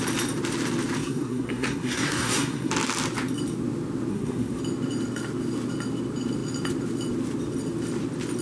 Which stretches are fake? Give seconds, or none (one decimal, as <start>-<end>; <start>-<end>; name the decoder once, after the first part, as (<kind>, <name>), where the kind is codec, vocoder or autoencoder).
1.0-2.7 (codec, SNAC); 4.1-4.6